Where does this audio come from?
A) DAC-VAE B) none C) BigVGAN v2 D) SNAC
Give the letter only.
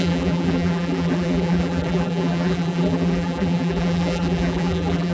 C